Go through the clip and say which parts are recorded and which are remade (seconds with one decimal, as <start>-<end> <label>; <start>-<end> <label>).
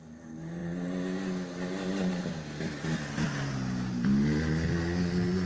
0.0-5.5 recorded